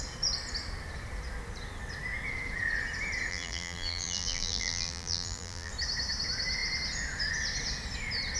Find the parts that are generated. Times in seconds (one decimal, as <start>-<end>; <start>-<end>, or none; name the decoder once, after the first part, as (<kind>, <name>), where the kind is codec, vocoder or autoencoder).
3.3-5.7 (vocoder, BigVGAN v2)